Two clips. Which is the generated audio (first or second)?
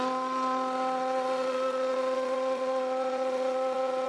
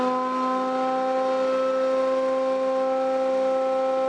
first